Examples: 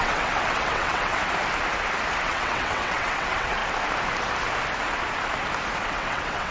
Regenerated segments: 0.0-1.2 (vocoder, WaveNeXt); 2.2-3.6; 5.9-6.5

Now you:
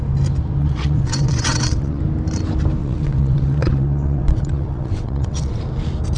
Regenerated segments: 0.6-2.0 (vocoder, WaveNeXt); 2.8-5.6

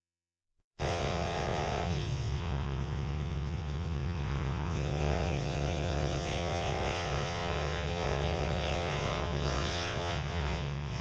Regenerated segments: 0.0-11.0 (vocoder, WaveNeXt)

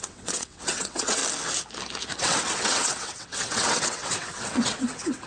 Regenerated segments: 0.0-1.2 (vocoder, WaveNeXt); 2.2-5.3

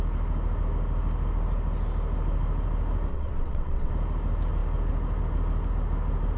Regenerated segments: 3.1-3.9 (vocoder, WaveNeXt)

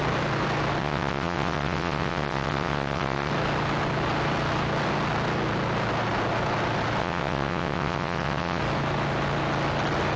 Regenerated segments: 0.8-3.3 (vocoder, WaveNeXt); 7.0-8.6

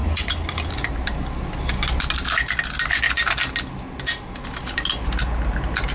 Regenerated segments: none